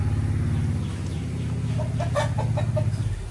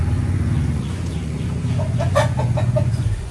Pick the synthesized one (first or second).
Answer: second